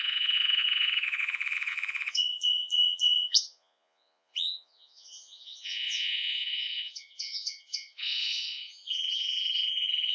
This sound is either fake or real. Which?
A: fake